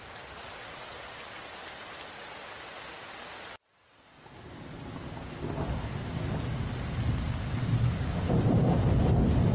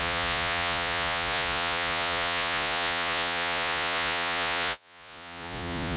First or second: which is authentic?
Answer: first